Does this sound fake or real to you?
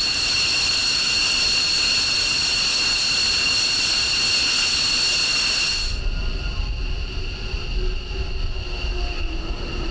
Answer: real